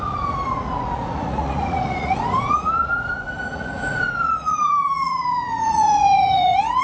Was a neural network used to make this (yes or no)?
yes